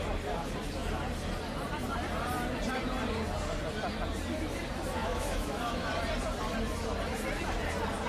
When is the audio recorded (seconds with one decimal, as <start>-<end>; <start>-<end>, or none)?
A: 0.0-5.0; 5.9-8.1